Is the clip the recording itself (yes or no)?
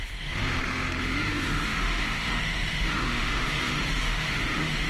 no